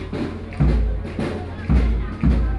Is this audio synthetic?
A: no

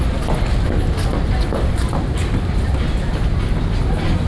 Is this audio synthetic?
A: no